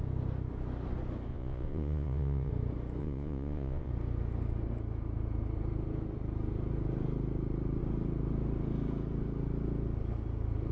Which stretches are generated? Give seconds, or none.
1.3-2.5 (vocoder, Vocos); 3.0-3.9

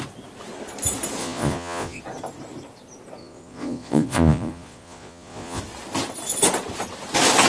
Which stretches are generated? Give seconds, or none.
1.2-2.0 (vocoder, Vocos); 3.2-5.6